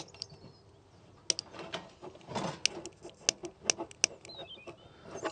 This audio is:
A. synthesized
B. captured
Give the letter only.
B